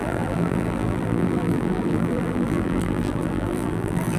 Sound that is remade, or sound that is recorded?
remade